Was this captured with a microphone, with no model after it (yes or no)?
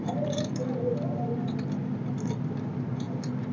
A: yes